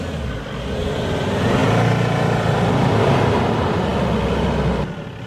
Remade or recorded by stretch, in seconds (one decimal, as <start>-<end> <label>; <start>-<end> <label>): 0.0-5.3 recorded